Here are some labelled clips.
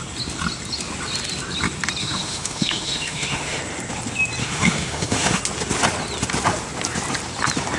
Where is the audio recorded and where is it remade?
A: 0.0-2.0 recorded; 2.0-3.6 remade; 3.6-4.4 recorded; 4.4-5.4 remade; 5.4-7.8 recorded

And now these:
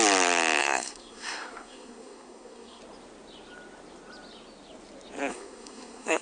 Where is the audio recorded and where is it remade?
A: 0.0-0.6 recorded; 0.6-2.8 remade; 2.8-5.3 recorded; 5.3-6.2 remade

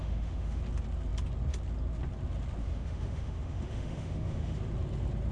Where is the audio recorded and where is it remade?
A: 0.0-0.6 remade; 0.6-2.6 recorded; 2.6-4.6 remade; 4.6-5.3 recorded

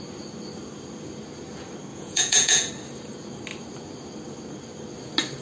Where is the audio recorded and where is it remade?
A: 0.0-1.9 recorded; 1.9-2.7 remade; 2.7-5.4 recorded

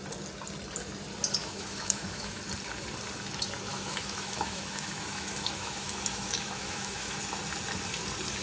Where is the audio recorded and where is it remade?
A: 0.0-1.4 recorded; 1.4-2.4 remade; 2.4-3.7 recorded; 3.7-7.2 remade; 7.2-8.4 recorded

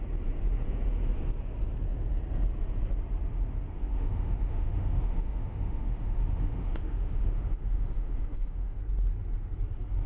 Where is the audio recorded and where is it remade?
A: 0.0-3.8 recorded; 3.8-8.8 remade; 8.8-10.1 recorded